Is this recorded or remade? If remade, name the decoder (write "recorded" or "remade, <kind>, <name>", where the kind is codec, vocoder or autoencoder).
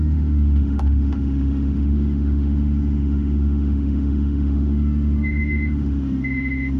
remade, autoencoder, DAC-VAE